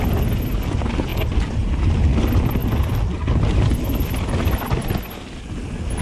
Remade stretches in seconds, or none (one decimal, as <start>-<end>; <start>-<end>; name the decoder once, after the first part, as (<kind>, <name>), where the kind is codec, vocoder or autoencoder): none